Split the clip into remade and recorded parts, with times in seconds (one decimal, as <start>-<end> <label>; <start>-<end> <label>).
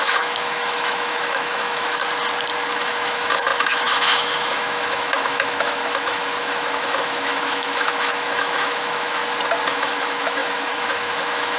0.0-2.0 remade; 2.0-2.7 recorded; 2.7-9.2 remade; 9.2-9.7 recorded; 9.7-11.6 remade